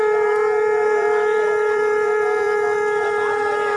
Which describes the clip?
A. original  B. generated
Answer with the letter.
B